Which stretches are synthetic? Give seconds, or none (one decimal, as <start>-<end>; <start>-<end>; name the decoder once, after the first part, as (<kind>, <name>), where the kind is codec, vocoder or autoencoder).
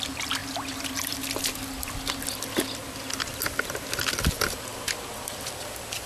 4.7-6.1 (vocoder, BigVGAN v2)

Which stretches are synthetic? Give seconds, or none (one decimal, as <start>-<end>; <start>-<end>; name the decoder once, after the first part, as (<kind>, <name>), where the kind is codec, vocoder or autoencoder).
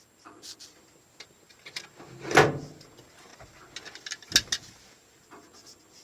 none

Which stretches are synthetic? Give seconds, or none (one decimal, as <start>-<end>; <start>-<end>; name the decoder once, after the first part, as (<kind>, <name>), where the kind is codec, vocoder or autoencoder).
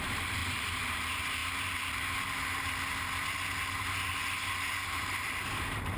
0.0-1.4 (vocoder, BigVGAN v2); 4.7-6.0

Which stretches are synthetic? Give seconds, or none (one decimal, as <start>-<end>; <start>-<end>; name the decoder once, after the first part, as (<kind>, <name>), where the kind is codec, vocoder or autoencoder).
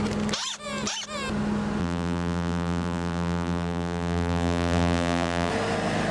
1.8-5.5 (vocoder, BigVGAN v2)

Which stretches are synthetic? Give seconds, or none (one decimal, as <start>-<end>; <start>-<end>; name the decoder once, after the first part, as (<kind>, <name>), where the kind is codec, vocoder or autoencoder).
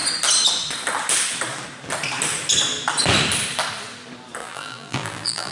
4.4-5.5 (vocoder, BigVGAN v2)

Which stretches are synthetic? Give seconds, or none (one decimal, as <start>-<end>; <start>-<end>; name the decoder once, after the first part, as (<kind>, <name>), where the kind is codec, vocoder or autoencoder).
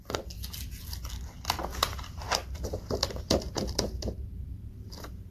1.7-5.3 (vocoder, BigVGAN v2)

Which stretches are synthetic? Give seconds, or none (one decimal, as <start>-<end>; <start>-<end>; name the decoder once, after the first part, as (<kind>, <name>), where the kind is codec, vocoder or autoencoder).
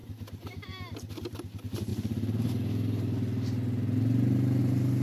0.0-1.9 (vocoder, BigVGAN v2); 4.6-5.0